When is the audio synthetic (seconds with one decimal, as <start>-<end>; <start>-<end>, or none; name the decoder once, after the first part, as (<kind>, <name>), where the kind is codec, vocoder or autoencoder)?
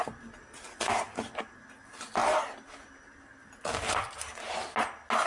none